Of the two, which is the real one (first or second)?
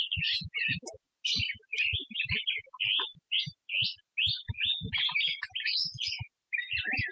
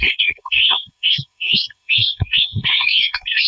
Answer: first